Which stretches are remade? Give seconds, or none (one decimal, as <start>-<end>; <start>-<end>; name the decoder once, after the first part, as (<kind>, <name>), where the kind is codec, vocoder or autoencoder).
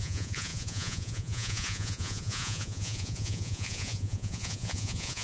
0.0-5.2 (vocoder, Vocos)